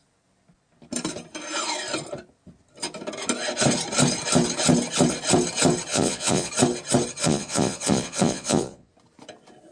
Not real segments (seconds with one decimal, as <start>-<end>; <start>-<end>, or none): 5.9-6.5; 7.2-8.9